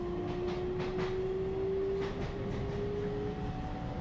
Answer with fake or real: real